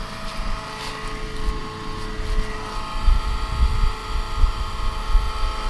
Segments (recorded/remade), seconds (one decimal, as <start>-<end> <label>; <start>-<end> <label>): 0.0-5.7 recorded